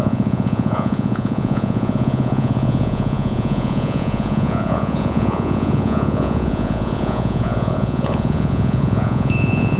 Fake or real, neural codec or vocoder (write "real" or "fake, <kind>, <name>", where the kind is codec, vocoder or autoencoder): fake, vocoder, Vocos